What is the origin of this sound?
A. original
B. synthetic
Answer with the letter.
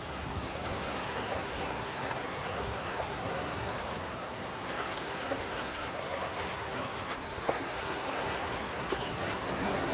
B